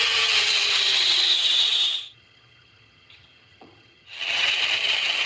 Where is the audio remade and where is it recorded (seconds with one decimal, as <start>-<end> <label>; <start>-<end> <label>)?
0.0-5.3 remade